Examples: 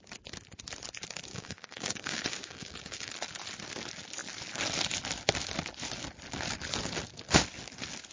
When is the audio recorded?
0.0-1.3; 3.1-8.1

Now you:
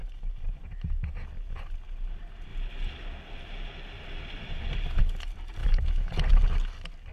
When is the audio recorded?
0.0-5.6; 6.1-7.1

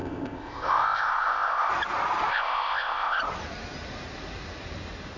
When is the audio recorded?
1.7-2.3; 3.2-5.2

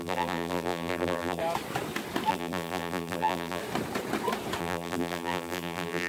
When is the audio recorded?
1.4-2.3; 3.6-4.6

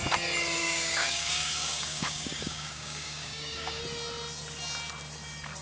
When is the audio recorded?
0.0-0.6; 3.8-5.6

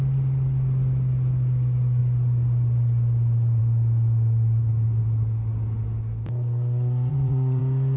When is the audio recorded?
0.0-7.1; 7.6-8.0

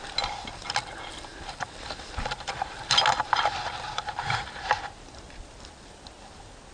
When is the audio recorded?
0.0-6.7